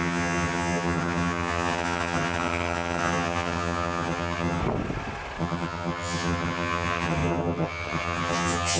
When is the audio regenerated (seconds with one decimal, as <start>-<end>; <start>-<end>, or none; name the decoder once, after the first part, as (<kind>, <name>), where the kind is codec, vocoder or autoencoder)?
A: 0.0-4.6 (vocoder, HiFi-GAN); 5.4-8.8

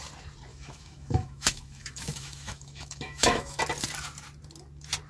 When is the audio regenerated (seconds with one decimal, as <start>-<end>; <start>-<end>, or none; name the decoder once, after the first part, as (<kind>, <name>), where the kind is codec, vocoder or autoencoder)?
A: 0.5-3.6 (autoencoder, DAC-VAE)

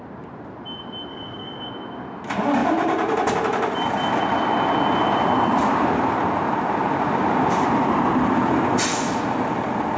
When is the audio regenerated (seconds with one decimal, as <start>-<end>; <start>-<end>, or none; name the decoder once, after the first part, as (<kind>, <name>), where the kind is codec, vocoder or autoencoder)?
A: 1.1-1.7 (codec, DAC)

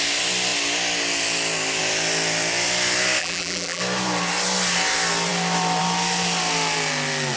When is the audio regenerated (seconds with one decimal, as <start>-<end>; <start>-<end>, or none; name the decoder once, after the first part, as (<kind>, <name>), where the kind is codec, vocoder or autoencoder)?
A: 3.2-3.8 (vocoder, BigVGAN v2)

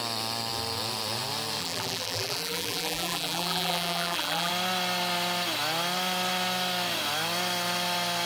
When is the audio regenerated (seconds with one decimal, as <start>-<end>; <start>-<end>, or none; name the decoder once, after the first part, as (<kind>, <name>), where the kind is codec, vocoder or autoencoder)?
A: 1.6-4.5 (vocoder, BigVGAN v2)

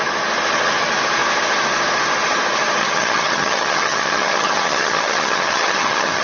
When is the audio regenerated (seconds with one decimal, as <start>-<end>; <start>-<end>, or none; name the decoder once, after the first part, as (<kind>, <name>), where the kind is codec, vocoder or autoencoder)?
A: 2.8-6.2 (vocoder, HiFi-GAN)